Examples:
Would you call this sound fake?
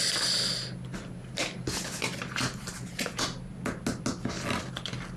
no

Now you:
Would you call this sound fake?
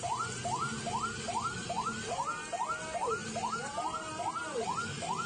no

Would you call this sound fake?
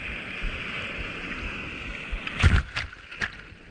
no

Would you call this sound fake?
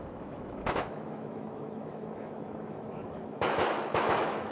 yes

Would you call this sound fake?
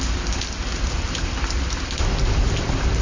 no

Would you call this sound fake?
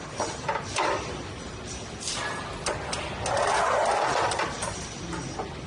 no